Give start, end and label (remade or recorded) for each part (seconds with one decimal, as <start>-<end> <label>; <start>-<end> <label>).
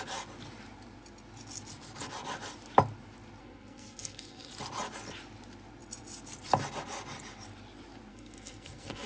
0.0-3.4 recorded; 3.4-4.5 remade; 4.5-8.1 recorded; 8.1-9.1 remade